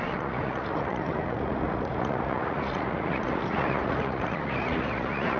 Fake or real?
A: fake